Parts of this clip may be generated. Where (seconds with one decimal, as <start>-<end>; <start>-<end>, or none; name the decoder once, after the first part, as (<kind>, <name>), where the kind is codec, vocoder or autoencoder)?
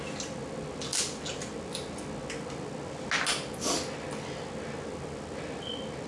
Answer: none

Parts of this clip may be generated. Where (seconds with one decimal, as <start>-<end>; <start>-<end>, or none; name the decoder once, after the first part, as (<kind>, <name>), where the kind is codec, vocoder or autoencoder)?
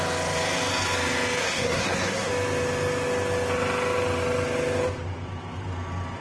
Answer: 1.4-2.3 (codec, SNAC)